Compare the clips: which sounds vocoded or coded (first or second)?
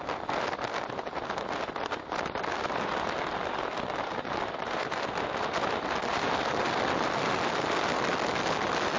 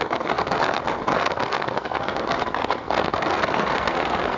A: second